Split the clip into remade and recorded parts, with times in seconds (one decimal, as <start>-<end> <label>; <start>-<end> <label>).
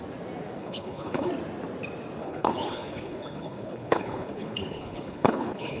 0.0-0.6 recorded; 0.6-1.3 remade; 1.3-2.2 recorded; 2.2-5.8 remade